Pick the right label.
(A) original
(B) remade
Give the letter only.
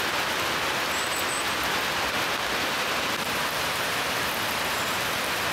A